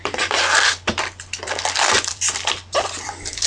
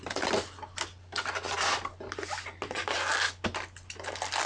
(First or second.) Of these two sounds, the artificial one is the first